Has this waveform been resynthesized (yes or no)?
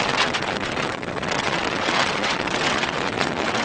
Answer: yes